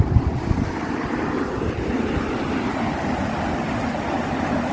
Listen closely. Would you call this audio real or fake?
real